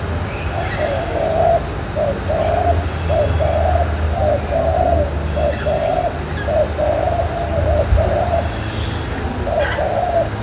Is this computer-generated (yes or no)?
no